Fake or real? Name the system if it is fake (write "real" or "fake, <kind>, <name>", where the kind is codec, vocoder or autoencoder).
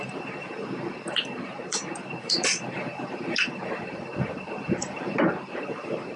fake, vocoder, BigVGAN v2